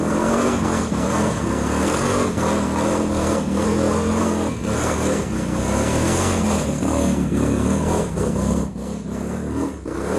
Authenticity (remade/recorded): remade